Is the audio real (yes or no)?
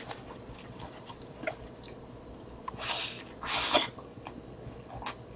yes